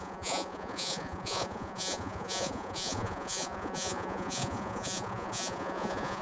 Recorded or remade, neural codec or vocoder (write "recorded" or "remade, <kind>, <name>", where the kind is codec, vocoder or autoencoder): remade, vocoder, Vocos